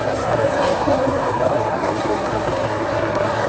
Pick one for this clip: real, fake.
fake